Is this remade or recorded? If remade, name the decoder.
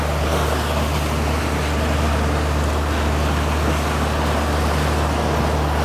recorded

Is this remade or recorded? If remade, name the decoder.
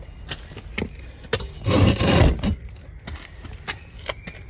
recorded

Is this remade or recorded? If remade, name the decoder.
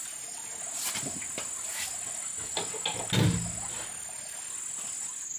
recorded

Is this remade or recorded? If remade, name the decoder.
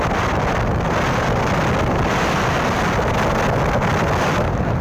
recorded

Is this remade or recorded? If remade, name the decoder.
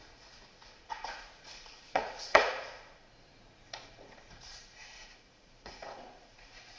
remade, vocoder, Vocos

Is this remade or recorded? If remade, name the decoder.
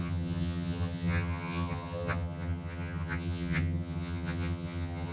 remade, vocoder, HiFi-GAN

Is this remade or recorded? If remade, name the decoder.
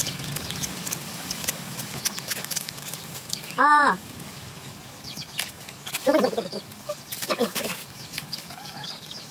remade, codec, DAC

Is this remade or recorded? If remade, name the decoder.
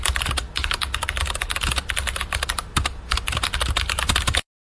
recorded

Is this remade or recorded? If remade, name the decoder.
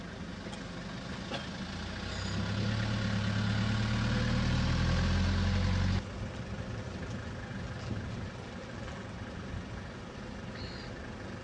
recorded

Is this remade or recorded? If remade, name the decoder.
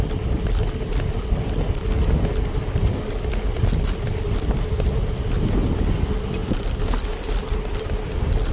recorded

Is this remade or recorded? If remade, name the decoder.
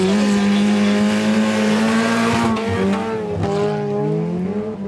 recorded